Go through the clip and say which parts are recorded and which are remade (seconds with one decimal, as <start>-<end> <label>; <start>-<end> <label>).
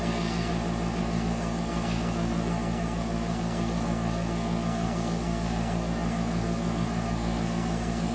0.0-0.5 remade; 0.5-1.0 recorded; 1.0-8.1 remade